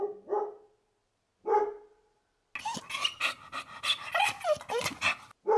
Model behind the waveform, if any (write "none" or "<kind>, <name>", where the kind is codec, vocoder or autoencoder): none